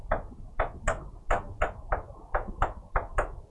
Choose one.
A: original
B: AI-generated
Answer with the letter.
A